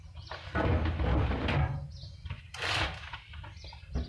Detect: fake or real real